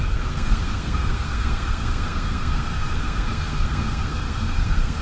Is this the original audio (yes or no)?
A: no